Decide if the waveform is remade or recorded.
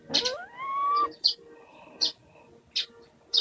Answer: recorded